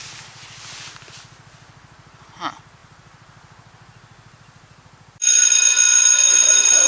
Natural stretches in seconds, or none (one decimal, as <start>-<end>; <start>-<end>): 0.0-6.9